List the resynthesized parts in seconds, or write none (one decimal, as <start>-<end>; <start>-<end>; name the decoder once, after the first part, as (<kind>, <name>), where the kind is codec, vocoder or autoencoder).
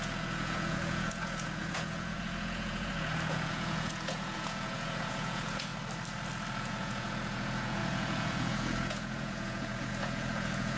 0.0-5.7 (vocoder, Vocos); 6.6-10.8